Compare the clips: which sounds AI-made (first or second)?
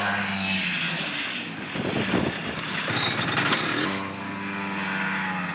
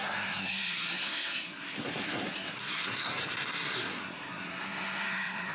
second